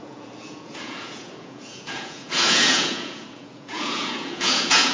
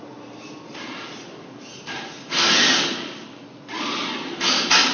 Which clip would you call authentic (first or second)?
second